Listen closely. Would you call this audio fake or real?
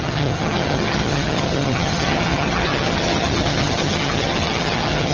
fake